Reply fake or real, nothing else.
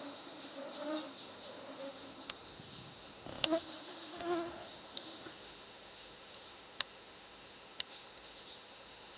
fake